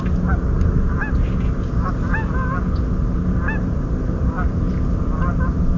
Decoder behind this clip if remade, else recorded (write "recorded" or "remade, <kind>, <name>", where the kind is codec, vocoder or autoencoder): recorded